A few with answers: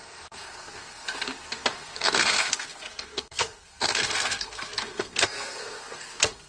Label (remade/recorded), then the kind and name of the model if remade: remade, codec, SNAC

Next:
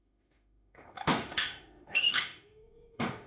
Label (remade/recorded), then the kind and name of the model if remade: remade, autoencoder, DAC-VAE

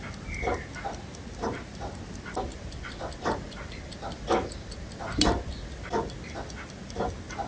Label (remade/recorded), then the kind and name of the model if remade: recorded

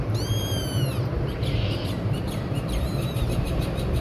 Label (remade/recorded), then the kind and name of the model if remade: remade, vocoder, BigVGAN v2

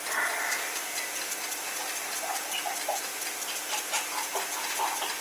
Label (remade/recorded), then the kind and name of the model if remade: recorded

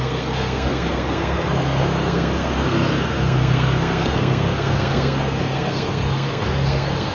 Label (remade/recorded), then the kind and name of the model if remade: remade, codec, SNAC